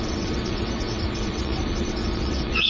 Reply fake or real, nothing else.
fake